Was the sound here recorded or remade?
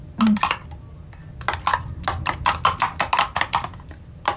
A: recorded